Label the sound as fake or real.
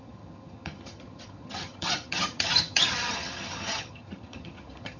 fake